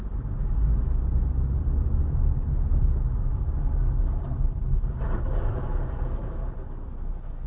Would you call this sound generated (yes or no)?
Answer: no